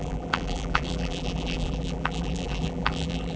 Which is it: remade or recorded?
remade